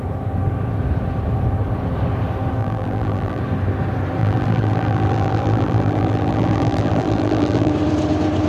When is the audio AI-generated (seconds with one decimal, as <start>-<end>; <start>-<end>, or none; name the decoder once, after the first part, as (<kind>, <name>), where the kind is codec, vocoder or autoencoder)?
2.6-3.4 (vocoder, BigVGAN v2); 4.2-7.7